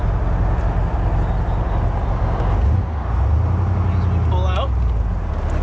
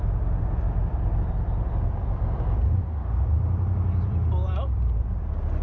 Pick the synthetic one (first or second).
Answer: second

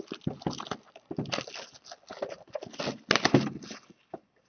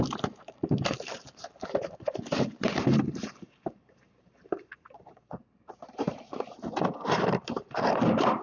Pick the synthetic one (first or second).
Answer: second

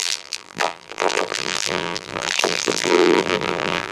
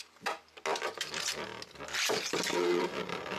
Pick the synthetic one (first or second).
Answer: first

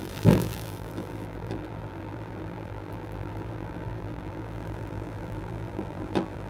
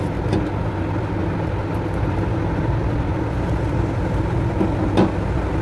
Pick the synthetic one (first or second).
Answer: first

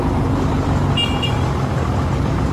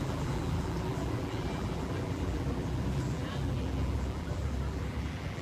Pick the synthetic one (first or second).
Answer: second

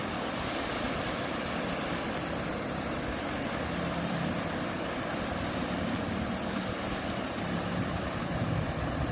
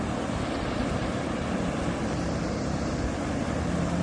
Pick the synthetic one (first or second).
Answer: first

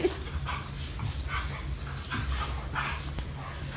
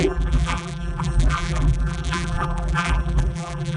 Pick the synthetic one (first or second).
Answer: second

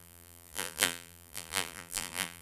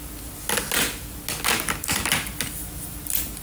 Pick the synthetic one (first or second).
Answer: first